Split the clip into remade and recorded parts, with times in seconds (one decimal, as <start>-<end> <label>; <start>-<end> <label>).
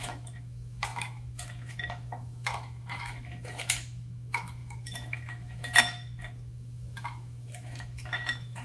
0.0-8.6 remade